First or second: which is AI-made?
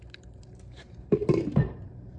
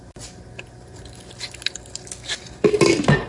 first